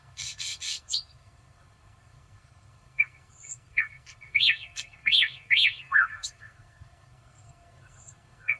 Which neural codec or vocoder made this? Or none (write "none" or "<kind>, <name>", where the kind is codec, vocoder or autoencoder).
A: codec, SNAC